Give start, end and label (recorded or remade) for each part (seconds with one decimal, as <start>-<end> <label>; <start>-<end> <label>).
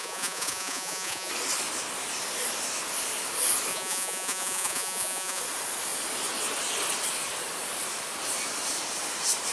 0.0-1.3 remade; 1.3-3.7 recorded; 3.7-5.4 remade; 5.4-9.5 recorded